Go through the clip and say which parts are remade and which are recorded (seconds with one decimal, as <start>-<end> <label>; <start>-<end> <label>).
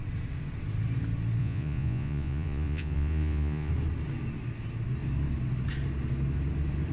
0.0-1.4 recorded; 1.4-3.7 remade; 3.7-6.9 recorded